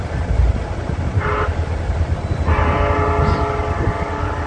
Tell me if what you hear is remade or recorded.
recorded